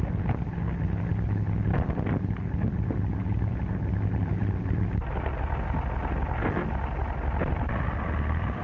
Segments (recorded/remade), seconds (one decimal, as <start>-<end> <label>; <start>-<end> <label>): 0.0-8.6 recorded